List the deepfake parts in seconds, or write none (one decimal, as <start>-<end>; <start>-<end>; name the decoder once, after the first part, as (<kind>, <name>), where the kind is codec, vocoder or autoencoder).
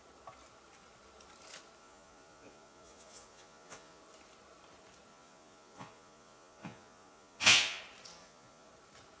1.8-4.0 (vocoder, Vocos); 5.1-7.8; 8.2-8.7